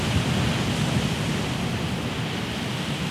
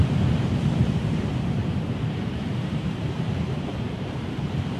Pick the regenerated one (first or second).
second